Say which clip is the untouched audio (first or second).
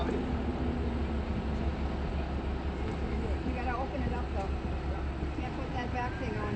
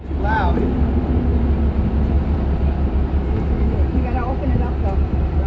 first